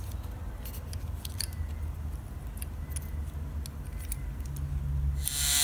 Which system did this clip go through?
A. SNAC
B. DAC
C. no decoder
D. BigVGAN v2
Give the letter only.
C